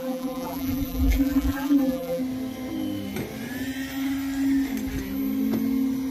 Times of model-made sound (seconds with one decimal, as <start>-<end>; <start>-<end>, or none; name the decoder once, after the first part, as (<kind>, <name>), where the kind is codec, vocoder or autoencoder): 0.0-2.2 (vocoder, BigVGAN v2)